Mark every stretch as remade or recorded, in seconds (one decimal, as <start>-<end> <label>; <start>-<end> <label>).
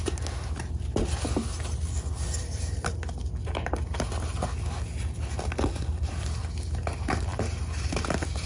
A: 0.0-8.5 recorded